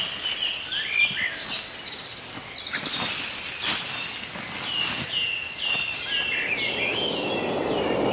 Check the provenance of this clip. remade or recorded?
recorded